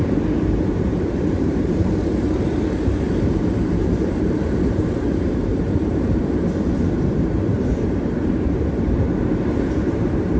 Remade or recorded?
remade